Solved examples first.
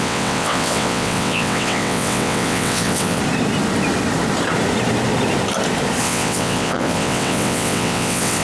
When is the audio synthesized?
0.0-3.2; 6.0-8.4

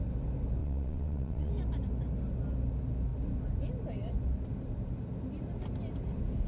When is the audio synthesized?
0.6-1.5